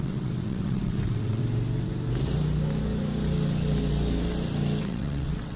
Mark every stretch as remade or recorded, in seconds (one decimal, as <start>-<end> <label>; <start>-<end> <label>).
0.0-1.4 remade; 1.4-4.8 recorded; 4.8-5.6 remade